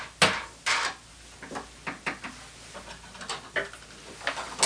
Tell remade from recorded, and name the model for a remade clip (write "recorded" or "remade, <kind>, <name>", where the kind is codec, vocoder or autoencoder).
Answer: recorded